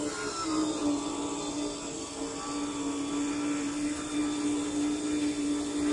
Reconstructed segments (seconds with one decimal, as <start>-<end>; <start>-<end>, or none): none